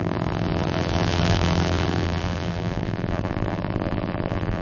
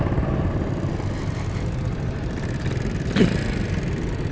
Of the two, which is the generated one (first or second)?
first